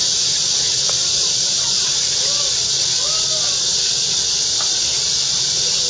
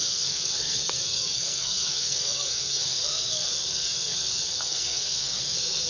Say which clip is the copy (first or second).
second